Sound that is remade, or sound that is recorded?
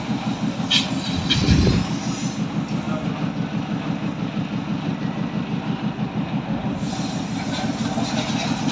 recorded